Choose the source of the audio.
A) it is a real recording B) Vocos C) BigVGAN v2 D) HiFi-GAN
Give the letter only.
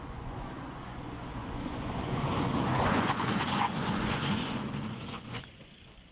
B